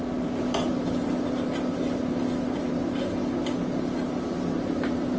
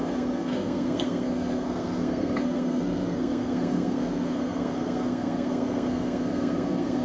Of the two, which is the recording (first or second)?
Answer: first